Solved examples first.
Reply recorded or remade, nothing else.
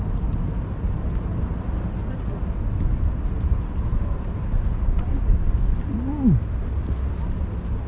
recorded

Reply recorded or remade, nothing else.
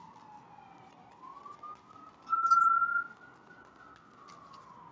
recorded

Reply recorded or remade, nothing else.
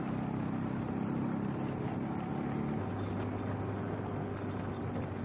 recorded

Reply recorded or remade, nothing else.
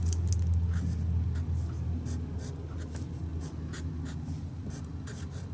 recorded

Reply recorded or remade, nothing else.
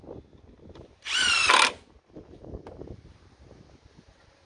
recorded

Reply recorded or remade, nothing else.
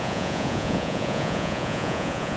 remade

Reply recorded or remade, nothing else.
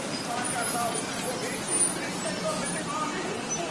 recorded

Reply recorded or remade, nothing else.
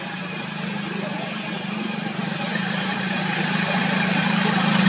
recorded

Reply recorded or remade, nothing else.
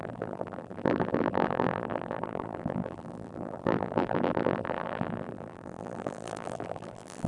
remade